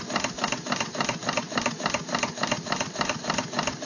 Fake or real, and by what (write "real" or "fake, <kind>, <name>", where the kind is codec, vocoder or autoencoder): real